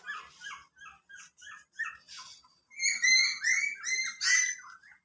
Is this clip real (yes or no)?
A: yes